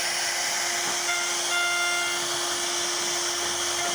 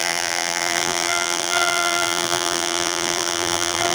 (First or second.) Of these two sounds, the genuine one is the first